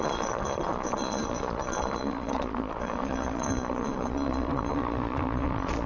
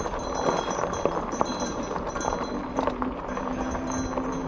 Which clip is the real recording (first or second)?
second